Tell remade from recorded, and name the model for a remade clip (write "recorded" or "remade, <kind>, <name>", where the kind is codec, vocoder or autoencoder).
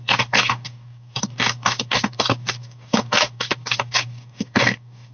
remade, codec, DAC